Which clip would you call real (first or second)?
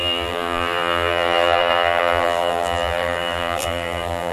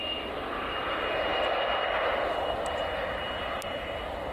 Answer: second